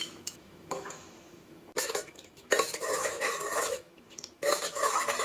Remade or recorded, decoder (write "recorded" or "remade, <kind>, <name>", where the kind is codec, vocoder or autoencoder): remade, autoencoder, DAC-VAE